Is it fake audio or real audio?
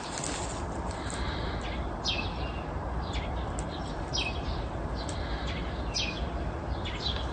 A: real